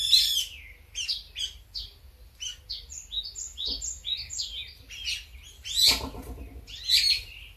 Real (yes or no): yes